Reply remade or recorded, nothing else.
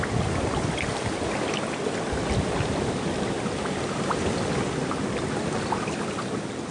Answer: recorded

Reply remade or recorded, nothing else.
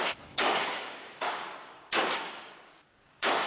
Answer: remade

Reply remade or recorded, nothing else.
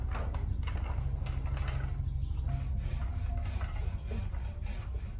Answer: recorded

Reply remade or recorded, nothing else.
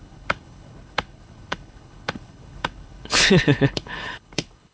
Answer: remade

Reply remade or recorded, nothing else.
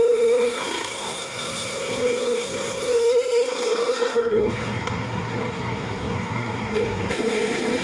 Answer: remade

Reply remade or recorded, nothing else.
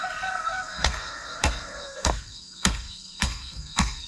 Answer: remade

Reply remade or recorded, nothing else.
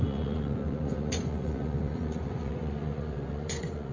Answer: remade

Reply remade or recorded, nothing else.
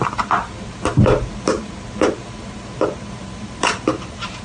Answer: remade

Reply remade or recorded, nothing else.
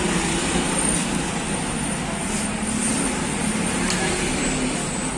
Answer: recorded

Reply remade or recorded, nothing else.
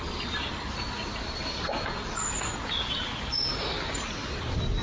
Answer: recorded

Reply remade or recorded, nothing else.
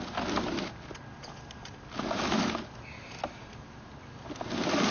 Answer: recorded